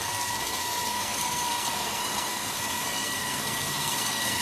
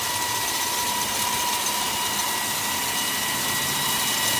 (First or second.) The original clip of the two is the second